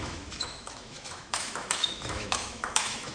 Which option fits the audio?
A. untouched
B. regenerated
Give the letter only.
B